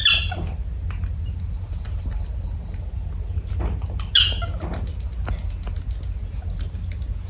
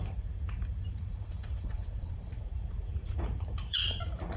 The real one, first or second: first